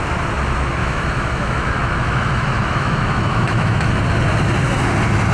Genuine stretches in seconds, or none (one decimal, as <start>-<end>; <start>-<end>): 0.0-0.8; 4.0-5.3